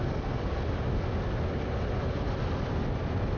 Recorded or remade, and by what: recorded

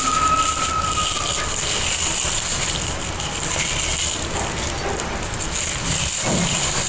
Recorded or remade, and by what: recorded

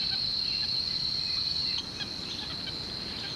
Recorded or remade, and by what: recorded